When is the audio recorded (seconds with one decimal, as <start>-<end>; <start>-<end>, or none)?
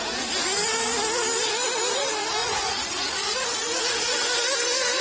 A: 0.0-2.4; 3.8-5.0